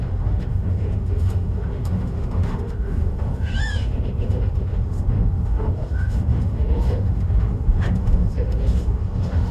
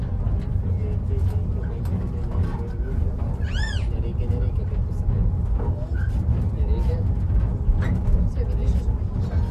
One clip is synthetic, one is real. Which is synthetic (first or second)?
first